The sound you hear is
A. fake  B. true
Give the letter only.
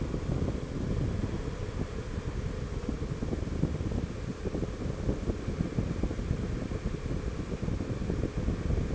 B